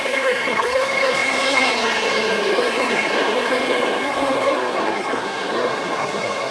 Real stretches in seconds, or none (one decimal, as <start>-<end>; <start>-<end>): none